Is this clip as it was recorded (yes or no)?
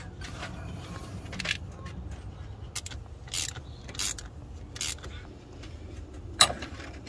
yes